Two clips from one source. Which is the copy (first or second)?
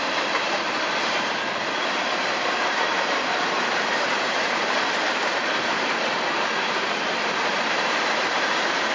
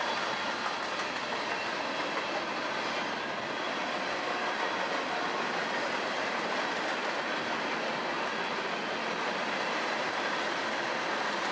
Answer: first